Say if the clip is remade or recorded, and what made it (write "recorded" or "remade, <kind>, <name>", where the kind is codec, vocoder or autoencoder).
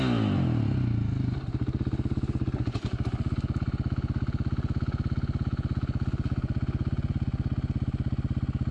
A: recorded